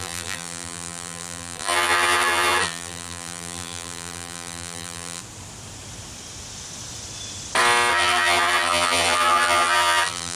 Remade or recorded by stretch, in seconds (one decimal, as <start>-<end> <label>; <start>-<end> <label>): 0.0-5.2 remade; 5.2-7.9 recorded; 7.9-10.3 remade